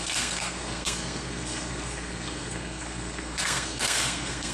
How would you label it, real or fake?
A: fake